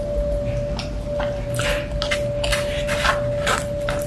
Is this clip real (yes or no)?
yes